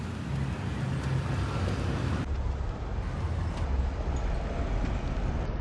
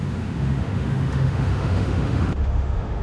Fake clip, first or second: second